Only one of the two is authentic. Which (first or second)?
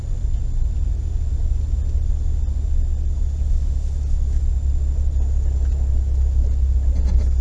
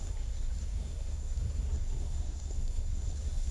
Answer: first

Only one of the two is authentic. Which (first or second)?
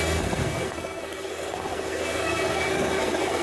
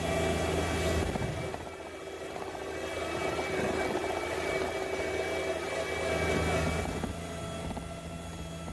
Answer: second